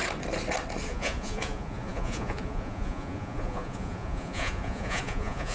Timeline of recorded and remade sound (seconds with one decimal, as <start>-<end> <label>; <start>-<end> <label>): 0.0-0.9 recorded; 0.9-5.5 remade